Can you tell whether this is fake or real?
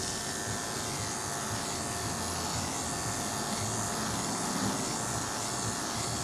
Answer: real